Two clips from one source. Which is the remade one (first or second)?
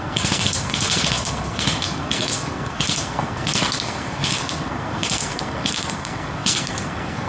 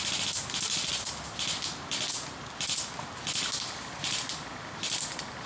first